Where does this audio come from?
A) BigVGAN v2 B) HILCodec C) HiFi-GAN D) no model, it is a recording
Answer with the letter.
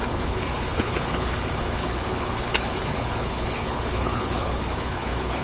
B